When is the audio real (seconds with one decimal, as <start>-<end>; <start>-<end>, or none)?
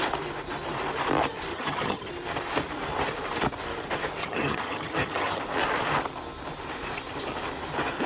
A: 0.0-1.5; 2.1-4.2; 5.4-8.1